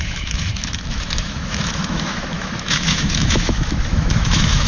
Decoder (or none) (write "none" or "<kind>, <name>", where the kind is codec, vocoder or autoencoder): autoencoder, DAC-VAE